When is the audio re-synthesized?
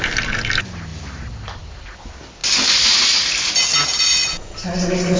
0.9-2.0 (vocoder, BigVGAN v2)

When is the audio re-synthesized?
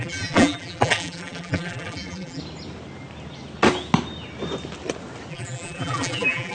0.0-2.4 (vocoder, BigVGAN v2); 5.3-6.5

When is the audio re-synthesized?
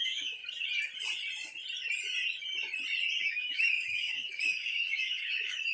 0.0-0.4 (autoencoder, DAC-VAE); 3.2-5.7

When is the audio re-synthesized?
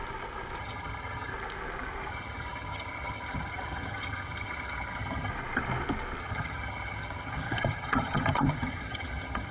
0.6-1.3 (vocoder, HiFi-GAN); 2.1-5.3; 6.2-9.5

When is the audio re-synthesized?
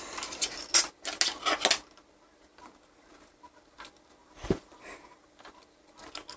4.2-5.3 (vocoder, BigVGAN v2)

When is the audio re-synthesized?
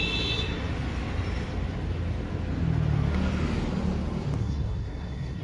4.4-5.4 (codec, SNAC)